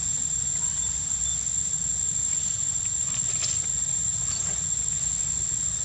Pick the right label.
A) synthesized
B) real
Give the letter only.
B